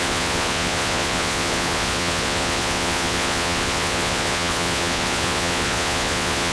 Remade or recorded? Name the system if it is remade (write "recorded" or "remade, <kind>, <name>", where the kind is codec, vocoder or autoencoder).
remade, vocoder, Vocos